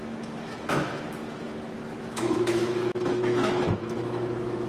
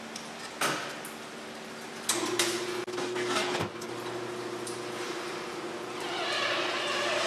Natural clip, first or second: second